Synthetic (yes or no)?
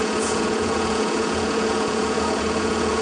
yes